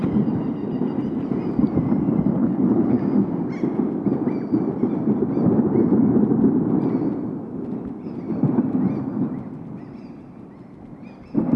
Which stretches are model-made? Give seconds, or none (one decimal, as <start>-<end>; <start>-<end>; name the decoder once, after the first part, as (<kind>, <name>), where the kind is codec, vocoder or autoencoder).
2.4-3.0 (codec, HILCodec)